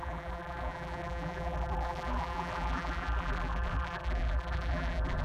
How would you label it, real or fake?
fake